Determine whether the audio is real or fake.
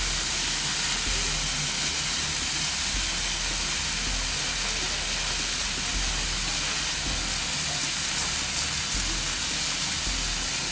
real